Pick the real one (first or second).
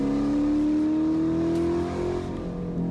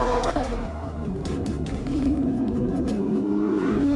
first